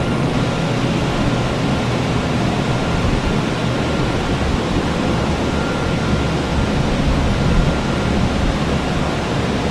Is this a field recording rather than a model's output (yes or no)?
yes